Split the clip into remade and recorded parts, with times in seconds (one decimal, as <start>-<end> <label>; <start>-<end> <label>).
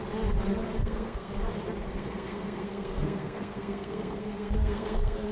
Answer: 0.0-0.8 recorded; 0.8-1.3 remade; 1.3-1.9 recorded; 1.9-5.3 remade